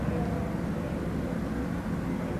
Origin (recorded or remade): recorded